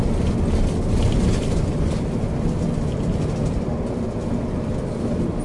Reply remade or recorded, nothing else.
recorded